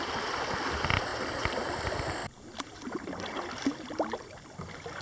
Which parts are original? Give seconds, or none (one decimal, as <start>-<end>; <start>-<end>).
0.0-5.0